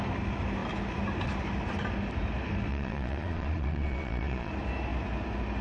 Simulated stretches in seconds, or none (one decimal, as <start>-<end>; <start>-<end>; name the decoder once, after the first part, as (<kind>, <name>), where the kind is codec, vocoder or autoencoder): 2.7-4.5 (vocoder, Vocos)